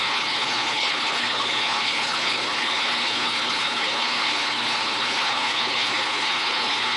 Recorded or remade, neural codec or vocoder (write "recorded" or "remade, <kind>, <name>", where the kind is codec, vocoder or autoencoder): remade, codec, HILCodec